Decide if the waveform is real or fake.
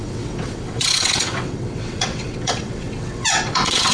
fake